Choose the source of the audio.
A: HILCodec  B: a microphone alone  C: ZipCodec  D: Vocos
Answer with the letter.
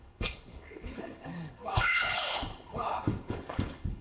A